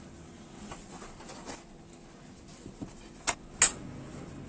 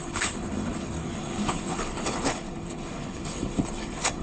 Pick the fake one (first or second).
second